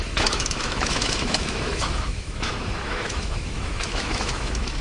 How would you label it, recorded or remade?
remade